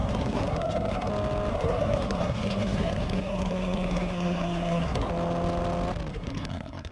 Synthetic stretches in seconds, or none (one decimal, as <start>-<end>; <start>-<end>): 0.0-1.1; 1.5-5.1; 6.1-6.9